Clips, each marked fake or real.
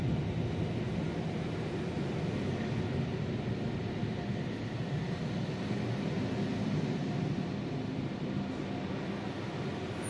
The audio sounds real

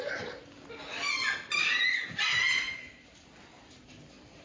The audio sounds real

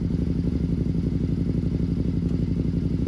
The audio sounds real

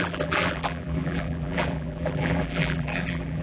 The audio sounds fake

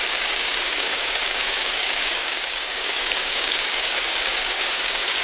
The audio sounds fake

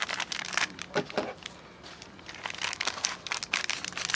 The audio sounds real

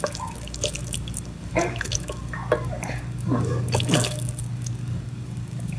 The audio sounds fake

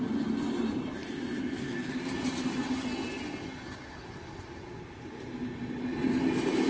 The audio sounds real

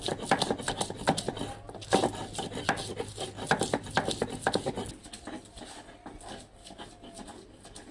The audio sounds real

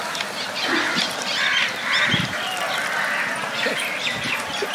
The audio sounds real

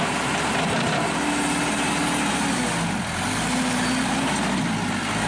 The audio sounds real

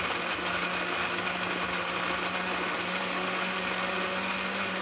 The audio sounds real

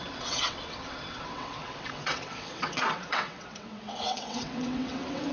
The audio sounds fake